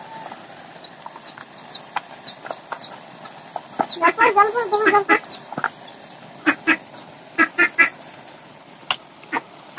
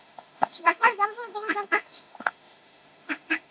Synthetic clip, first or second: second